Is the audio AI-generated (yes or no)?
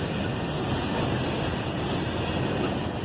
no